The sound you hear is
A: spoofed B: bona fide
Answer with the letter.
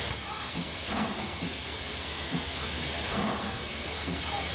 A